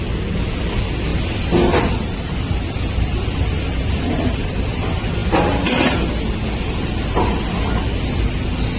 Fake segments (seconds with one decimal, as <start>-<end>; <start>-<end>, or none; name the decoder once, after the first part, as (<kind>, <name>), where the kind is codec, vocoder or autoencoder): none